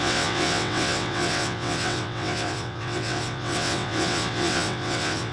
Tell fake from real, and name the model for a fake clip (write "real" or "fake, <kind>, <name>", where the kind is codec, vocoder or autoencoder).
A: fake, vocoder, WaveNeXt